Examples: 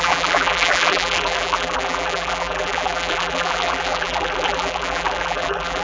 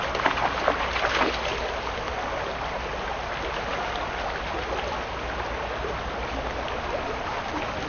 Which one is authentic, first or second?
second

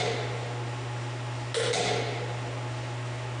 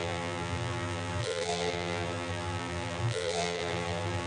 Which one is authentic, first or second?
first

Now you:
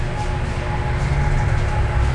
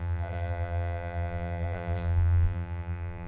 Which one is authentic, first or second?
first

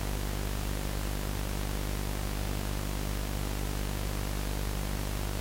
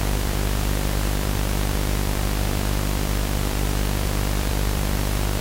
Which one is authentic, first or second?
first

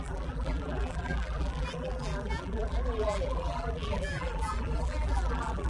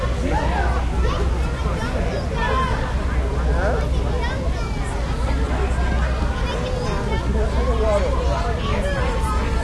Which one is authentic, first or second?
second